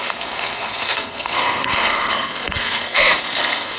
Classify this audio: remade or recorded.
remade